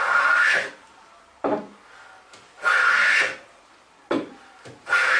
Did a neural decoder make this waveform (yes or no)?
no